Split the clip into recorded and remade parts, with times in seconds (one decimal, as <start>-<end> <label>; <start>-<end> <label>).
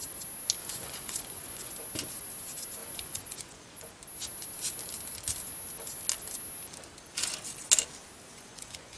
0.0-0.6 recorded; 0.6-1.7 remade; 1.7-2.8 recorded; 2.8-3.9 remade; 3.9-8.3 recorded; 8.3-9.0 remade